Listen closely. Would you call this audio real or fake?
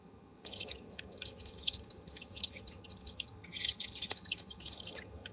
fake